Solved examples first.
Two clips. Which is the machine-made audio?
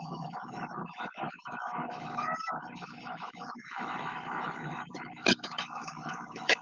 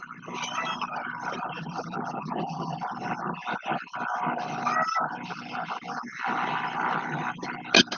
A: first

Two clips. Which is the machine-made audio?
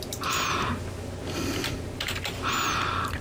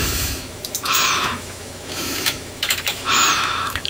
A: second